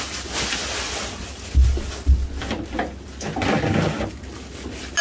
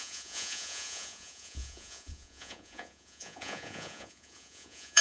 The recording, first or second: first